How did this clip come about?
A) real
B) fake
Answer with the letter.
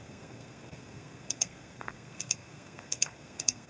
B